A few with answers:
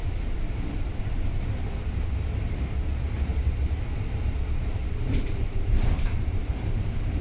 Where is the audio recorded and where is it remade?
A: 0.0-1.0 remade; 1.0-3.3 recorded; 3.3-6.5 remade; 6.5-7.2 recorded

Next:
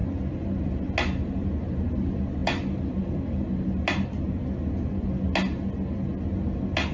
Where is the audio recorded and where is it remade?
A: 0.0-6.9 recorded